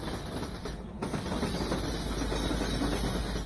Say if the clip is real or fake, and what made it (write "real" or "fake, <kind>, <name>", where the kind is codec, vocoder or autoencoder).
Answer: real